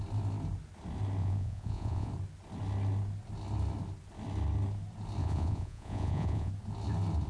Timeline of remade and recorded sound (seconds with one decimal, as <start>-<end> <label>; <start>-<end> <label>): 0.0-1.2 recorded; 1.2-2.1 remade; 2.1-5.2 recorded; 5.2-6.5 remade; 6.5-7.3 recorded